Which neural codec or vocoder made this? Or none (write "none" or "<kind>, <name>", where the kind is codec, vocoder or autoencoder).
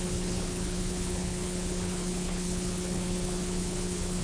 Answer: codec, HILCodec